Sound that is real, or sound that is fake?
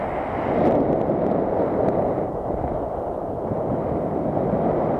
real